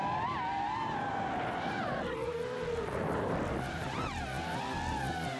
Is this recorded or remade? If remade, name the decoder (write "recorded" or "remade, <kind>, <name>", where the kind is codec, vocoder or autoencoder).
recorded